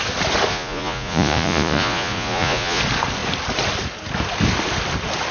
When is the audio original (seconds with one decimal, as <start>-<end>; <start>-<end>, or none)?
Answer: 0.0-0.5; 2.8-5.3